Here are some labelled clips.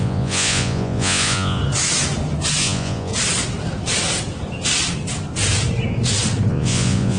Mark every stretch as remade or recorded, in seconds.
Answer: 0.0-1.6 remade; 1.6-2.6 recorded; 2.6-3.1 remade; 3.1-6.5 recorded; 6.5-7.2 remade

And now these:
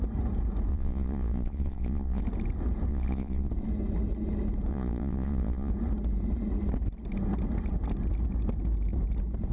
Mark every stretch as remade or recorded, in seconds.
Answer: 0.0-0.7 recorded; 0.7-2.2 remade; 2.2-2.9 recorded; 2.9-3.5 remade; 3.5-4.7 recorded; 4.7-5.7 remade; 5.7-9.5 recorded

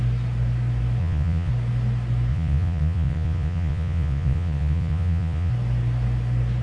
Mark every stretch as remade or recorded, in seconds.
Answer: 0.0-1.0 recorded; 1.0-1.5 remade; 1.5-2.3 recorded; 2.3-5.5 remade; 5.5-6.6 recorded

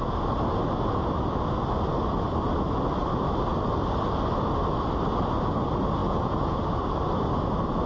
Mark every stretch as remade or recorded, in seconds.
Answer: 0.0-6.0 recorded; 6.0-6.6 remade; 6.6-7.9 recorded

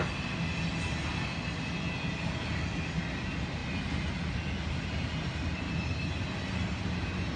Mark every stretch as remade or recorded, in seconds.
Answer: 0.0-7.4 recorded

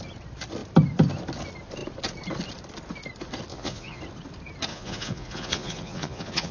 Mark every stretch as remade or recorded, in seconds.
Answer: 0.0-3.5 recorded; 3.5-4.0 remade; 4.0-4.7 recorded; 4.7-6.5 remade